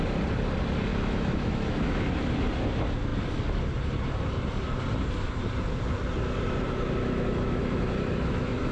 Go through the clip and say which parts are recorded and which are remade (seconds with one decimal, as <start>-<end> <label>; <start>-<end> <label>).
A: 0.0-0.9 recorded; 0.9-2.5 remade; 2.5-7.0 recorded; 7.0-8.7 remade